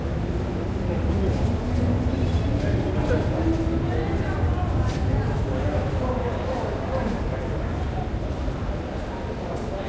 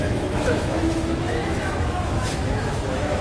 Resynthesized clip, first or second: second